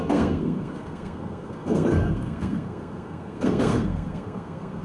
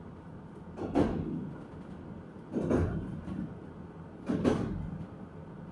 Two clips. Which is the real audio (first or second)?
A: second